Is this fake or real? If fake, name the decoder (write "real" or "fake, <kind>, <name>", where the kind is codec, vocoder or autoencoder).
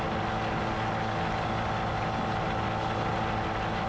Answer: real